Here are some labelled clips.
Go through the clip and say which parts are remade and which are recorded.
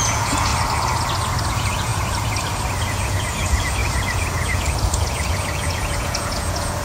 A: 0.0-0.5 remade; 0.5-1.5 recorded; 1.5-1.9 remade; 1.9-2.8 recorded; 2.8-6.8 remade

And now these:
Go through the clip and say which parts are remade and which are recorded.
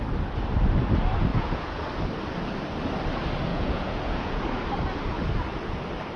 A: 0.0-1.3 recorded; 1.3-1.8 remade; 1.8-3.5 recorded; 3.5-4.4 remade; 4.4-6.2 recorded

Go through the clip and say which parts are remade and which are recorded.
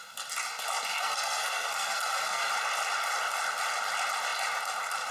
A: 0.0-0.9 recorded; 0.9-2.5 remade; 2.5-5.1 recorded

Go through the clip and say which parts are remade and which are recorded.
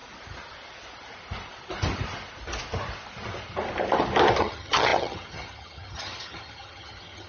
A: 0.0-4.4 recorded; 4.4-7.3 remade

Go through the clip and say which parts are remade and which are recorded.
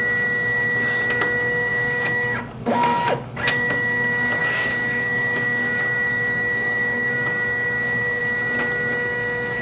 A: 0.0-1.7 recorded; 1.7-3.5 remade; 3.5-4.4 recorded; 4.4-8.2 remade; 8.2-9.6 recorded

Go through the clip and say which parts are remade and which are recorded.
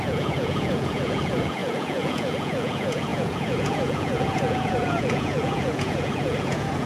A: 0.0-6.9 remade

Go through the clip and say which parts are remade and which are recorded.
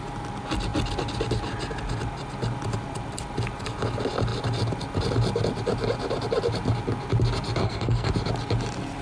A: 0.0-7.6 recorded; 7.6-8.1 remade; 8.1-9.0 recorded